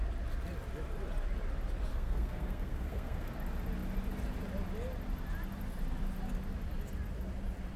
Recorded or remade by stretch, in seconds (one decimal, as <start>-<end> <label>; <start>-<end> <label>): 0.0-1.9 recorded; 1.9-3.3 remade; 3.3-7.8 recorded